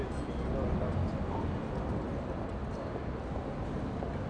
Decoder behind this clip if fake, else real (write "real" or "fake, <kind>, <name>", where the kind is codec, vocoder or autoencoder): real